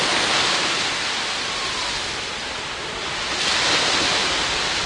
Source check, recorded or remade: recorded